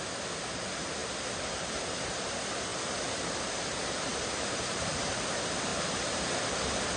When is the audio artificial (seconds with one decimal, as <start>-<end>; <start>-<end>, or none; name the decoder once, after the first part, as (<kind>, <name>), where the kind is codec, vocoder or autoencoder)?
4.1-4.9 (vocoder, BigVGAN v2); 5.7-6.2